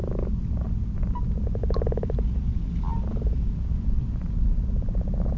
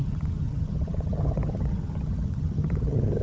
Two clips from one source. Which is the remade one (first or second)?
second